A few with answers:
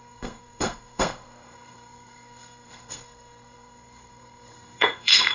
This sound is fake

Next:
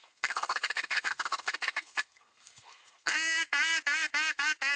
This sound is fake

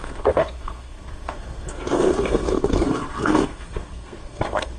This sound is fake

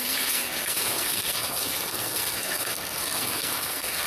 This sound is fake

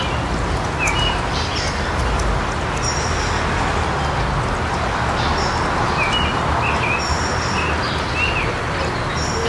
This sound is real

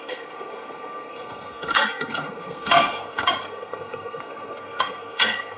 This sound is fake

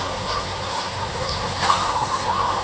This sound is fake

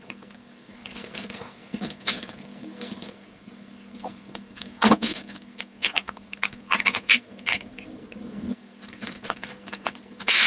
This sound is fake